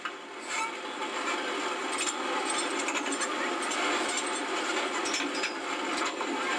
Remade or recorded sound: recorded